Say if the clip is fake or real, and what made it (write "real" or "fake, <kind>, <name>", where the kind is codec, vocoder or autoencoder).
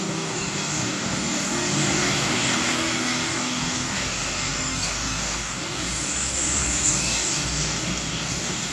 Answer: fake, codec, DAC